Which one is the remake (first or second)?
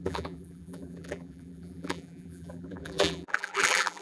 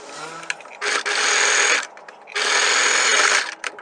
first